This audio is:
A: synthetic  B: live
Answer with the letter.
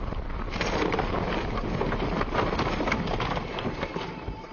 B